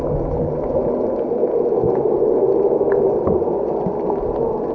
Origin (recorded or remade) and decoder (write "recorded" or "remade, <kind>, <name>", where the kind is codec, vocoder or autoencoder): recorded